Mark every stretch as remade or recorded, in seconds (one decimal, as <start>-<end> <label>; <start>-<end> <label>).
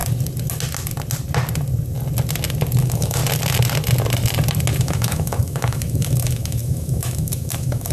0.0-2.8 recorded; 2.8-3.2 remade; 3.2-4.7 recorded; 4.7-7.9 remade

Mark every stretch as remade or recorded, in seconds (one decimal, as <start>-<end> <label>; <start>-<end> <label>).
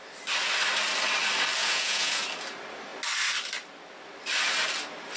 0.0-1.6 recorded; 1.6-2.2 remade; 2.2-5.2 recorded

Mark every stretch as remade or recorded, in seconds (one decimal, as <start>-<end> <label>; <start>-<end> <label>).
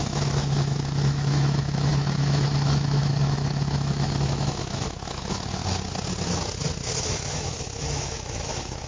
0.0-5.6 remade; 5.6-7.0 recorded; 7.0-8.9 remade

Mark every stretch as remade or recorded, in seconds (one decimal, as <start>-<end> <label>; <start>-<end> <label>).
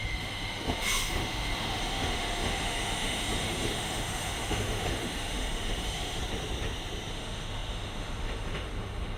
0.0-6.2 remade; 6.2-7.1 recorded; 7.1-9.2 remade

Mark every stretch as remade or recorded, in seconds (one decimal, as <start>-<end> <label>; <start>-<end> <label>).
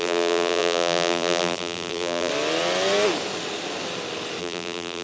0.0-2.3 remade; 2.3-4.4 recorded; 4.4-5.0 remade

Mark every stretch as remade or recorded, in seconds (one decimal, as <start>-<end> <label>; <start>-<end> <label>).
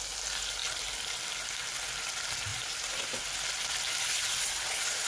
0.0-2.5 recorded; 2.5-3.2 remade; 3.2-5.1 recorded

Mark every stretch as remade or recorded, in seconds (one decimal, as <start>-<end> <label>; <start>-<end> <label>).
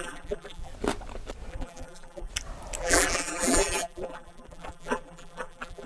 0.0-0.7 remade; 0.7-1.5 recorded; 1.5-2.3 remade; 2.3-2.8 recorded; 2.8-5.9 remade